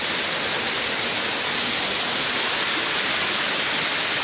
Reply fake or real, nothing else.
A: real